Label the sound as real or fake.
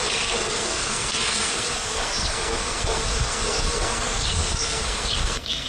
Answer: fake